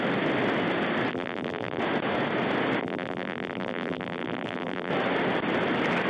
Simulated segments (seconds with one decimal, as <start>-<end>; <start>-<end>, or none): 1.1-1.8; 2.8-4.9